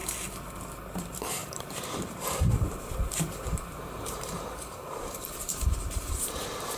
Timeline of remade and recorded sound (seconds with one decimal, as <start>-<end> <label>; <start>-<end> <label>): 0.0-0.7 recorded; 0.7-6.8 remade